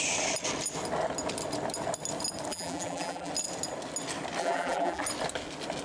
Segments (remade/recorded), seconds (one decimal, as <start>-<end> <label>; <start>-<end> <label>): 0.0-2.5 recorded; 2.5-3.3 remade; 3.3-4.4 recorded; 4.4-5.0 remade; 5.0-5.8 recorded